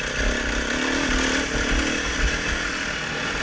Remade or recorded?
recorded